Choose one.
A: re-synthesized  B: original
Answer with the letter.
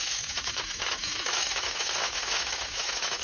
A